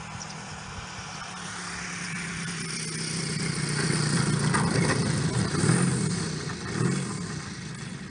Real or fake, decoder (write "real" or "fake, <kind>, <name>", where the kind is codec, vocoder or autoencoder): real